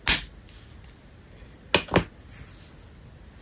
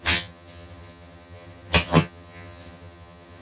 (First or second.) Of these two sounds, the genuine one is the first